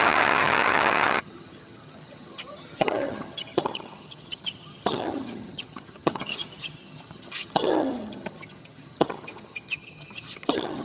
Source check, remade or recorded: remade